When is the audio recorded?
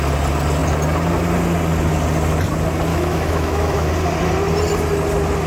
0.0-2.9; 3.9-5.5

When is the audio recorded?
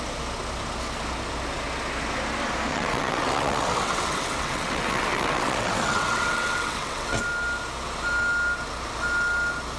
0.0-2.7; 7.2-9.8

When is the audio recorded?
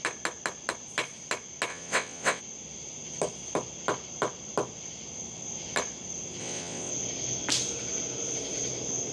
0.0-1.7; 2.4-6.4; 6.9-9.1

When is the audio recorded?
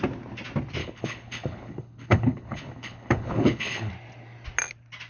0.0-0.8; 3.9-5.1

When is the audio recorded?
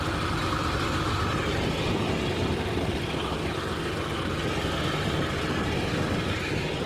0.0-5.9; 6.5-6.9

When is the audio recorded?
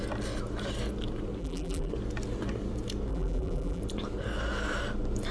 0.0-1.4; 1.9-3.1; 3.8-5.3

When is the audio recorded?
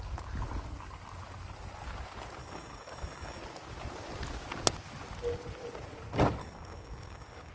0.0-2.4; 3.4-6.4